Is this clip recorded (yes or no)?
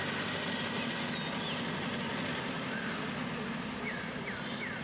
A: yes